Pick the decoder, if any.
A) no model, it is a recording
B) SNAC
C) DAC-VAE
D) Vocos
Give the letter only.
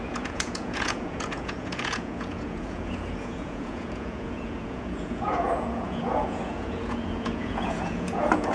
D